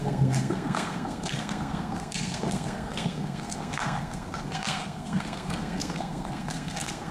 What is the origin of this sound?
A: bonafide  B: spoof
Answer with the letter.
B